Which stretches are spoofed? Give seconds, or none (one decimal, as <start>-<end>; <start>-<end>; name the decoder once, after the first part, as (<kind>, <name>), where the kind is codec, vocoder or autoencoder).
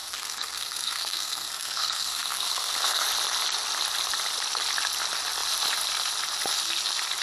0.0-3.0 (codec, SNAC)